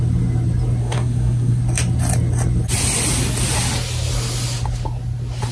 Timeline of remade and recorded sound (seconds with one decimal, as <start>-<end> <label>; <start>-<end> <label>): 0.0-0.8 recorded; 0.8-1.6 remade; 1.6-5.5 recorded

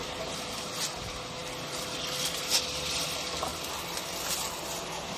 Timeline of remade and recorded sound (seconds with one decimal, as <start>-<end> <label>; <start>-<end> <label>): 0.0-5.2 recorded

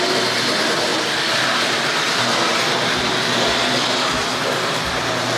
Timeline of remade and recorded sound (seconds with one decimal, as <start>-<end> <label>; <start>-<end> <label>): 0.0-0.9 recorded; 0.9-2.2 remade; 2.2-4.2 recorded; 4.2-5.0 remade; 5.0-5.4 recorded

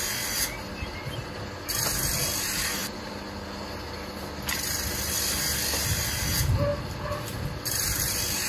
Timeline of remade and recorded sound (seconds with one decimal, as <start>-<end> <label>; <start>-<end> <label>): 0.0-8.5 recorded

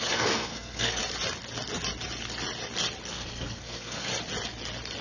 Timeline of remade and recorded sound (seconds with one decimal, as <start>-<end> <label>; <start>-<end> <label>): 0.0-1.0 remade; 1.0-3.1 recorded; 3.1-4.1 remade; 4.1-5.0 recorded